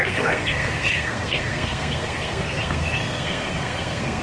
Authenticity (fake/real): fake